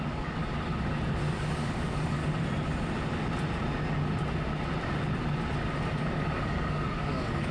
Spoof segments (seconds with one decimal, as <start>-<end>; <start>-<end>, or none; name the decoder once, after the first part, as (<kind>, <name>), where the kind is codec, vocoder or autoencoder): 0.0-0.4 (codec, DAC); 1.3-2.2; 5.9-7.5